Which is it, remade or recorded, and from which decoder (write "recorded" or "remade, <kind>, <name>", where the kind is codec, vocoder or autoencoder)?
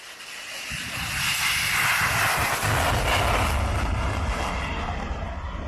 recorded